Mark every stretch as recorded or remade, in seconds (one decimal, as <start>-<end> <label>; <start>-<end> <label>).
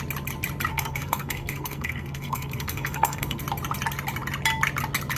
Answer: 0.0-0.7 recorded; 0.7-3.4 remade; 3.4-5.2 recorded